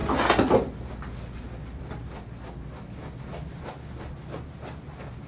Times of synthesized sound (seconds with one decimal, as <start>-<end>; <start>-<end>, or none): none